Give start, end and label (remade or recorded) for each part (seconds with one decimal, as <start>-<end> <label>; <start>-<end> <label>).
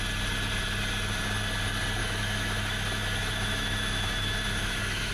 0.0-2.0 recorded; 2.0-5.1 remade